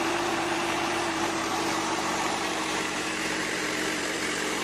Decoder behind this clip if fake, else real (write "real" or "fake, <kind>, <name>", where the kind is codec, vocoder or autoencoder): fake, vocoder, BigVGAN v2